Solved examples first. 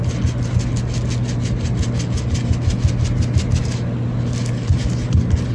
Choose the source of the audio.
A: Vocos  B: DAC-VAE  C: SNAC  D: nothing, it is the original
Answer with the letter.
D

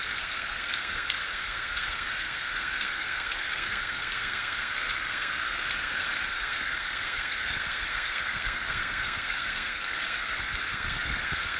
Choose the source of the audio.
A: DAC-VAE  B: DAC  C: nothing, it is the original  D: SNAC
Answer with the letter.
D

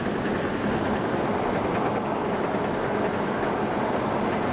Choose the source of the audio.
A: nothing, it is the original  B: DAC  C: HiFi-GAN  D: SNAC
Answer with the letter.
A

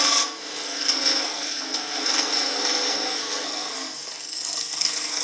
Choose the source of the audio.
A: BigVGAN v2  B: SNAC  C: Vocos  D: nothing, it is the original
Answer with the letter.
B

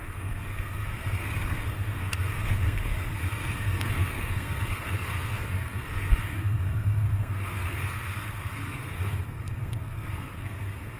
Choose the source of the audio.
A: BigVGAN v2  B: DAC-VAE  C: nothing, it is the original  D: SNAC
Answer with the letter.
D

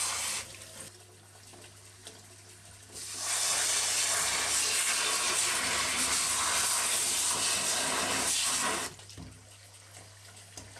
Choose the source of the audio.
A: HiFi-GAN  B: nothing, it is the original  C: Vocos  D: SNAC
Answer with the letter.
B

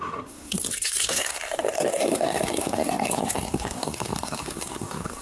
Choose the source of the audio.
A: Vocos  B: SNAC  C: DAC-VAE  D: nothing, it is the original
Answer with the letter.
B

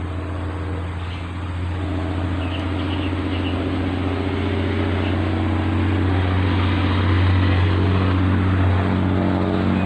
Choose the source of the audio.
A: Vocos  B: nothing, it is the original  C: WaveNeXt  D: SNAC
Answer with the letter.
B